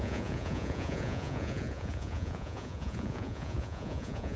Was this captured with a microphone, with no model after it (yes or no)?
no